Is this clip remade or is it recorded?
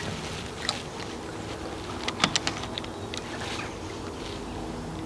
recorded